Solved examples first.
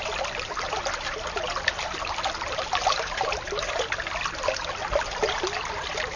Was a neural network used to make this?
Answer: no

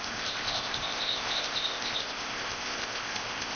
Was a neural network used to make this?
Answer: yes